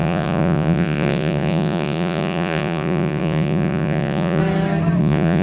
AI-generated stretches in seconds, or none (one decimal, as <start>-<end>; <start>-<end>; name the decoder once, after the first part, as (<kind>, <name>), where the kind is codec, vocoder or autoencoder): 0.0-4.4 (vocoder, Vocos); 5.0-5.4